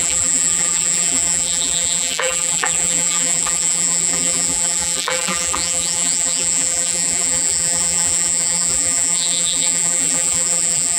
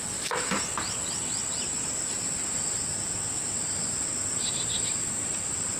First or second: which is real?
second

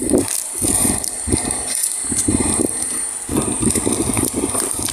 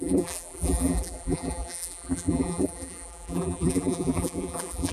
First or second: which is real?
first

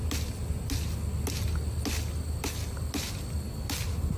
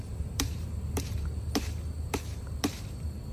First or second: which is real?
first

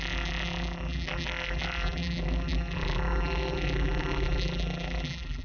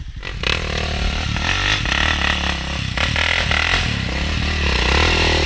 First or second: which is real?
second